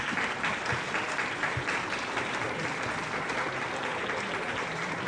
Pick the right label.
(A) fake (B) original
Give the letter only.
B